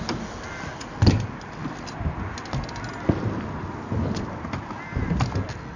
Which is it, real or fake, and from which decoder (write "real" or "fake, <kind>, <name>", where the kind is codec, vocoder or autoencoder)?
real